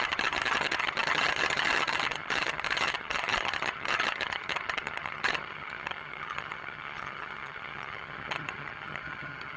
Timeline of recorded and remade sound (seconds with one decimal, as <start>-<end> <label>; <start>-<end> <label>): 0.0-9.6 remade